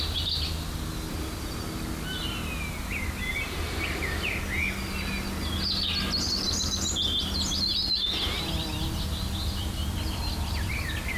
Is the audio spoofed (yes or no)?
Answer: no